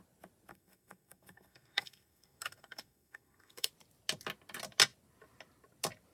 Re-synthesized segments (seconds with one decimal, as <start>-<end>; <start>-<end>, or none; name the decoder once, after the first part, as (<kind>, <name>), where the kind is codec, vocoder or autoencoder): 0.5-3.7 (codec, SNAC)